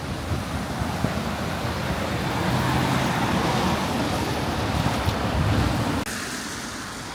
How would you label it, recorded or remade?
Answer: recorded